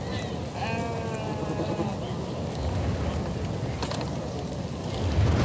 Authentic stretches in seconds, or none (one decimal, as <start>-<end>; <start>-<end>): 0.0-5.4